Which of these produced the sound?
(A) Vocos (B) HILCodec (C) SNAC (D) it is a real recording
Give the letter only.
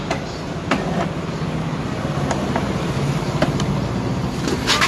D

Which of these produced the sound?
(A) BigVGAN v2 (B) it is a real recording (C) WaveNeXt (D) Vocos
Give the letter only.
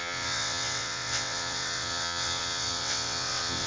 C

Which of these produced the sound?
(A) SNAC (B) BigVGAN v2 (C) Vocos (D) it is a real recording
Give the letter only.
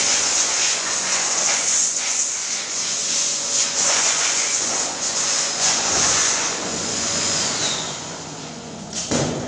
C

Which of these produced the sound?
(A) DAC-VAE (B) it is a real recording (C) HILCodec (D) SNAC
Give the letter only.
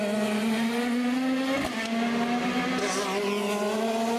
B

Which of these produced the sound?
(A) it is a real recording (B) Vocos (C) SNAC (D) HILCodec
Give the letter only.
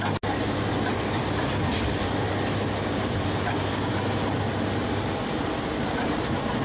A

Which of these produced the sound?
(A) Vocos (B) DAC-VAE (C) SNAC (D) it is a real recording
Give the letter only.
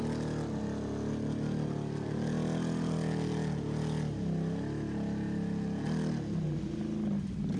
D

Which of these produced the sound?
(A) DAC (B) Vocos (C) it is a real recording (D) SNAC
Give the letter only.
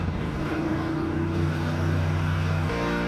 A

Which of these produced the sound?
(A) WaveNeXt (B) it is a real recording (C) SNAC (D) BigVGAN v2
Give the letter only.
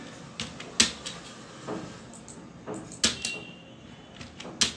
B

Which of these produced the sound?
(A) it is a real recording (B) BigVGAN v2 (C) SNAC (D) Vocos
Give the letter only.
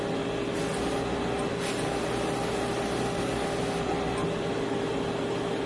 A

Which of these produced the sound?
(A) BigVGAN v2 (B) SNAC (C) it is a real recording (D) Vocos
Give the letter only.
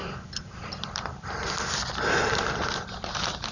A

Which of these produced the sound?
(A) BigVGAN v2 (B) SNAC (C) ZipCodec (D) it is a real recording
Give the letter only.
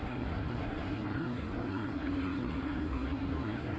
B